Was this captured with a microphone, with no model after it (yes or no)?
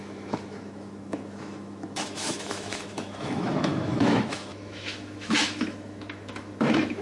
no